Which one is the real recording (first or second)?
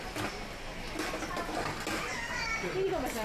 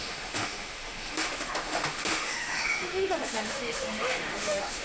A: first